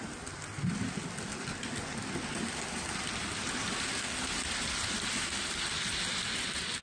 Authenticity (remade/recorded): recorded